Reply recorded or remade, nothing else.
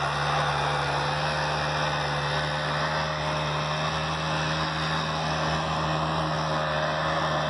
recorded